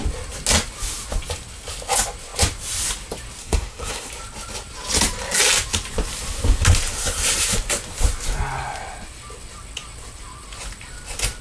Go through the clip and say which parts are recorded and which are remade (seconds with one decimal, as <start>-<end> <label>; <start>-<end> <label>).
0.0-3.4 recorded; 3.4-4.1 remade; 4.1-11.4 recorded